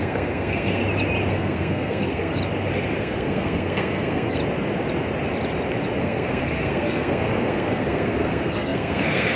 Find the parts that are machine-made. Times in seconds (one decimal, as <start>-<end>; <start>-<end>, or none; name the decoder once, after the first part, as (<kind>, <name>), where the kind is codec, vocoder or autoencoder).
0.0-0.8 (codec, SNAC); 1.3-2.4; 3.0-4.4; 6.0-9.4